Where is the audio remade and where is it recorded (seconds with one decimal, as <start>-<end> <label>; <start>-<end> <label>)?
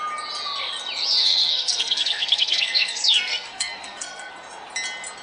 0.0-1.2 recorded; 1.2-4.3 remade; 4.3-5.2 recorded